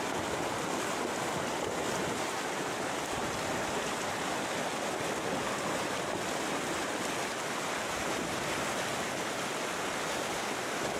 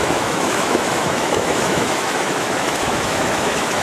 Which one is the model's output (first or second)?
second